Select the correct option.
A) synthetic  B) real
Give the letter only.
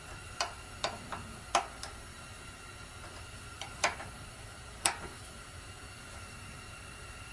B